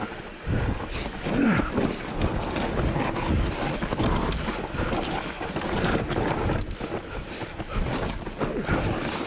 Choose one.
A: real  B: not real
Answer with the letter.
A